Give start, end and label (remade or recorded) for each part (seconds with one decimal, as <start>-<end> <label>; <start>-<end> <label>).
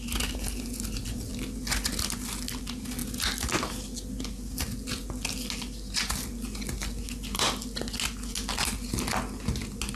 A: 0.0-10.0 recorded